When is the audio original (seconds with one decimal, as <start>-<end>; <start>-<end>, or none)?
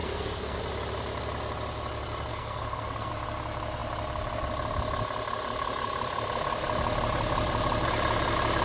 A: 0.6-2.3; 3.1-8.6